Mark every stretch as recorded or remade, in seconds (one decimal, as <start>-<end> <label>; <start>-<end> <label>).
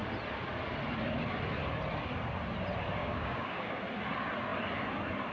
0.0-3.0 recorded; 3.0-3.8 remade; 3.8-5.3 recorded